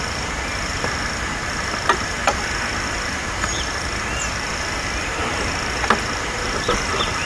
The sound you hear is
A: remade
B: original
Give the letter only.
B